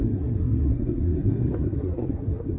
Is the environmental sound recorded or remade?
remade